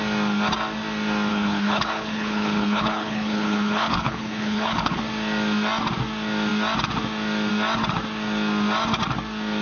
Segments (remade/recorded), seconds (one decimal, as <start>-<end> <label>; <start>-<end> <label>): 0.0-1.3 recorded; 1.3-5.0 remade; 5.0-9.6 recorded